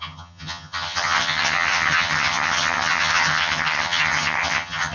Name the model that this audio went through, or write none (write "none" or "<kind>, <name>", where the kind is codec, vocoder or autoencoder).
vocoder, HiFi-GAN